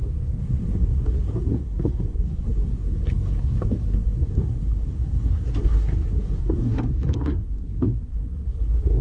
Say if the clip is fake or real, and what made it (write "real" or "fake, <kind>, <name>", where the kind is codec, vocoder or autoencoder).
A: fake, codec, SNAC